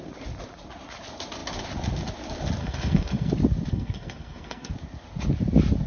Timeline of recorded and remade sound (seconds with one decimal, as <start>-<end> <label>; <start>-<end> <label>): 0.0-2.6 recorded; 2.6-3.3 remade; 3.3-3.7 recorded; 3.7-4.7 remade; 4.7-5.9 recorded